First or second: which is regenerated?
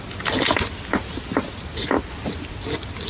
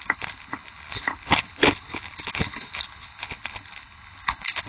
second